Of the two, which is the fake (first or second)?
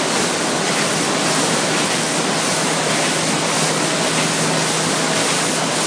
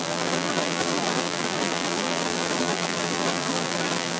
second